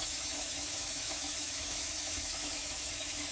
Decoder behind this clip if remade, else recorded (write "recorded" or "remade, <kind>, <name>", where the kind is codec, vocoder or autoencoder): remade, autoencoder, DAC-VAE